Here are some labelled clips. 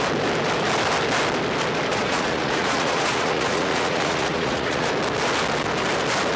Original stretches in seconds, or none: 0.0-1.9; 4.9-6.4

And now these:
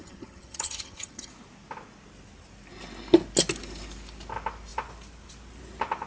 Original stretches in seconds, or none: 1.3-6.1